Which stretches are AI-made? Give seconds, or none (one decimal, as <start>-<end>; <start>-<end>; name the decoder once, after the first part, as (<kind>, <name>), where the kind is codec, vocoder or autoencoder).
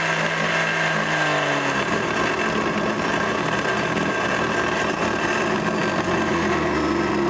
none